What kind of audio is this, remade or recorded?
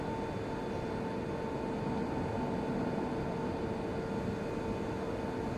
recorded